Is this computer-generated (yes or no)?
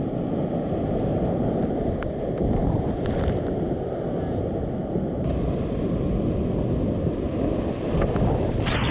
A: no